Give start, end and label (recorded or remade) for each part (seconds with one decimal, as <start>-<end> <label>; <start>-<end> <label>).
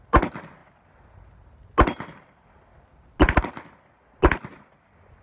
0.0-5.2 recorded